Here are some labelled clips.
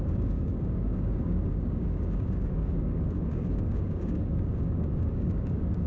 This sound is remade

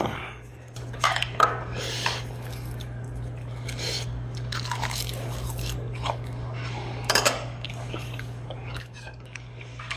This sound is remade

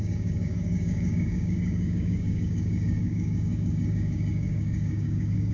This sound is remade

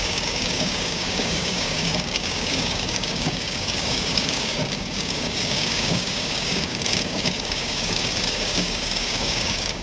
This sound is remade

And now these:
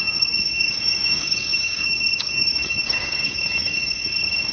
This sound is remade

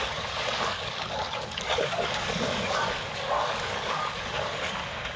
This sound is remade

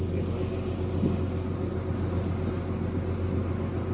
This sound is recorded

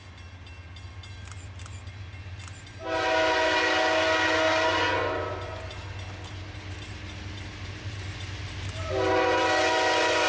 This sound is recorded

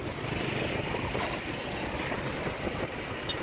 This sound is recorded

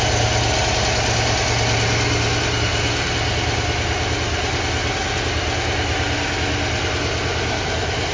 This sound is recorded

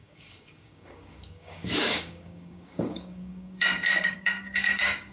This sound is remade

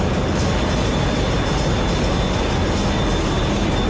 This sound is recorded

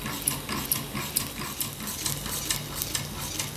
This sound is recorded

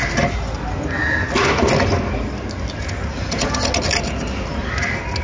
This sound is recorded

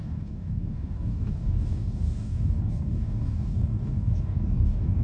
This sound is remade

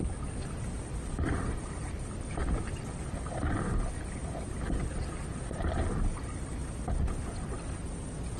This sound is recorded